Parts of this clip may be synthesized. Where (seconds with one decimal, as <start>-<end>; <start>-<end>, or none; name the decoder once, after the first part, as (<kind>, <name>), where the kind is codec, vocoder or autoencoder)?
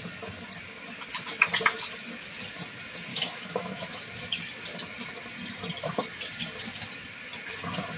3.1-4.0 (autoencoder, DAC-VAE)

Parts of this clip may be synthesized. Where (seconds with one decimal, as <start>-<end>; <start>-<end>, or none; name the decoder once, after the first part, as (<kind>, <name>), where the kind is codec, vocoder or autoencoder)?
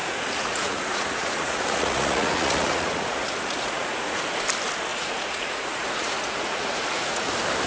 0.0-4.2 (vocoder, Vocos); 4.9-7.3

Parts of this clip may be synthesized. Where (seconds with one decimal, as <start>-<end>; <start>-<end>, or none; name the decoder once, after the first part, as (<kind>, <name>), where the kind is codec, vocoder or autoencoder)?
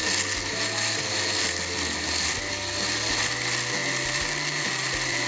none